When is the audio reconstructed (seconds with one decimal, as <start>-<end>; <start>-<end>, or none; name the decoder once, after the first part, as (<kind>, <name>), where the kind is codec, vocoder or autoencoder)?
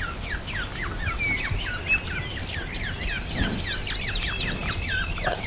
4.6-5.5 (vocoder, BigVGAN v2)